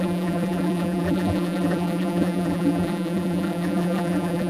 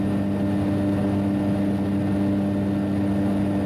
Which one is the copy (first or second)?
first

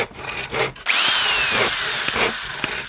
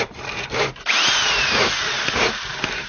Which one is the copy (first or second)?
second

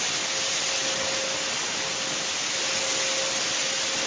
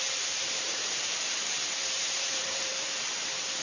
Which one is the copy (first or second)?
second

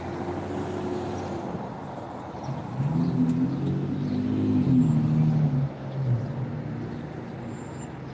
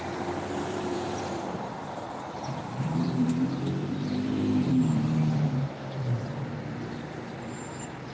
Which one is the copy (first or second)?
second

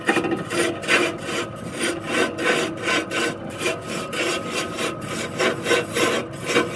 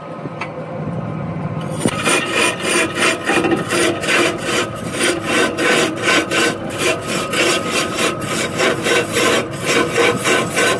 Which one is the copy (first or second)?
second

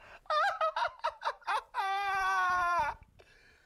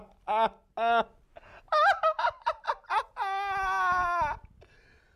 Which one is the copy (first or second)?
first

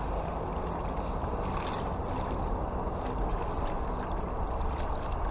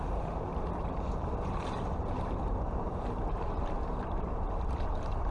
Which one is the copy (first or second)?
second